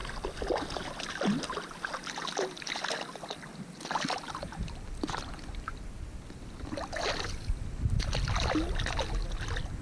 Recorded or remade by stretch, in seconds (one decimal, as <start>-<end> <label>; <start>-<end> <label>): 0.0-9.8 recorded